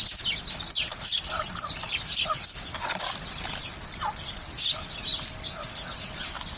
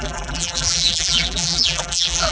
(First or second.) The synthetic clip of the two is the second